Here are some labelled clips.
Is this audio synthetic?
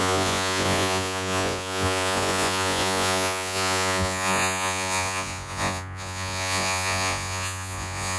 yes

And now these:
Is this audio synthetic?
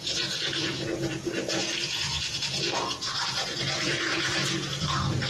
yes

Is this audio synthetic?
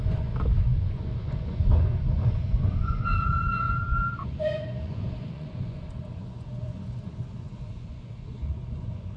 yes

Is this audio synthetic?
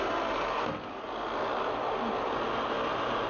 no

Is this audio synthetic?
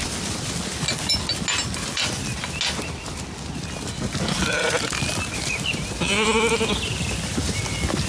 no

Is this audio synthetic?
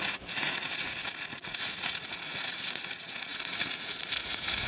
yes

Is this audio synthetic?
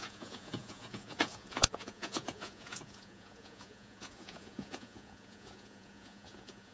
yes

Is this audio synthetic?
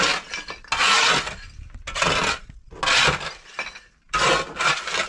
no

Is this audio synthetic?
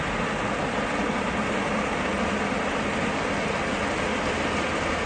no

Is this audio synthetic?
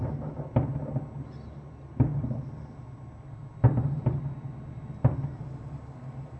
no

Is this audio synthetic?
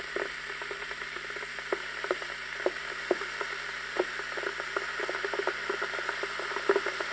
no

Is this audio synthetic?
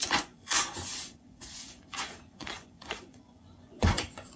yes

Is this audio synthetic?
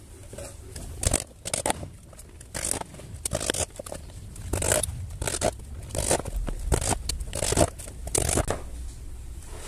no